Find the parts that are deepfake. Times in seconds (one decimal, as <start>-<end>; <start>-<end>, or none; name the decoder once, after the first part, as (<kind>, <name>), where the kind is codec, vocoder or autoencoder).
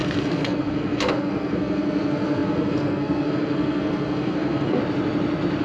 0.0-4.8 (codec, SNAC)